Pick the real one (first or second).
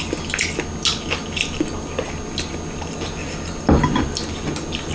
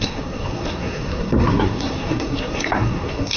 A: first